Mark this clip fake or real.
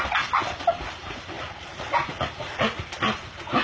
real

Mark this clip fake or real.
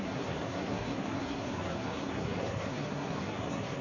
fake